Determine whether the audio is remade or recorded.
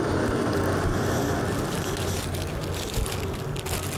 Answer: recorded